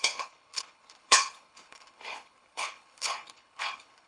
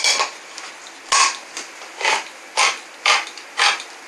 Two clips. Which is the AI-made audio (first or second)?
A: first